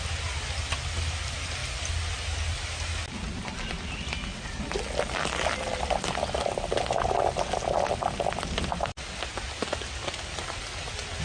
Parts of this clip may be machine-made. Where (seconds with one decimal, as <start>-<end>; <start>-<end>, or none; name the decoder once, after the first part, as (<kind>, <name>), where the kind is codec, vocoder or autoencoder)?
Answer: none